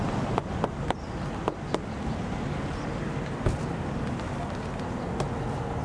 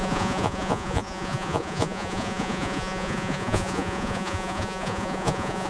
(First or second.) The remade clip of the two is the second